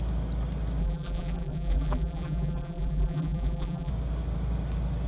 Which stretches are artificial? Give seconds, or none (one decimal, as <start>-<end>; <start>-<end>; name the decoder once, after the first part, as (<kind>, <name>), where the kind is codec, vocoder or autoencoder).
0.8-3.9 (vocoder, BigVGAN v2)